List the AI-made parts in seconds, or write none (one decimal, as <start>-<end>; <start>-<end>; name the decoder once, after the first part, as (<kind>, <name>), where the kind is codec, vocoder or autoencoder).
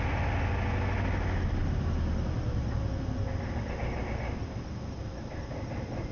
none